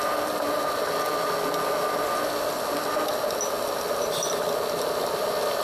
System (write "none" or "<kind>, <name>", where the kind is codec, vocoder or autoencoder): none